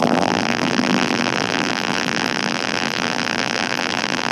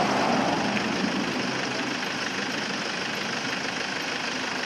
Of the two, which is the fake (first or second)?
first